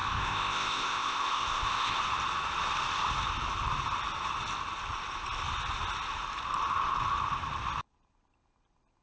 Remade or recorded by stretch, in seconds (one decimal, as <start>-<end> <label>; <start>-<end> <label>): 0.0-2.0 remade; 2.0-9.0 recorded